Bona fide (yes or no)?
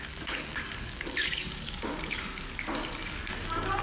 no